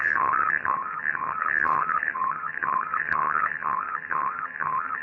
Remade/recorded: remade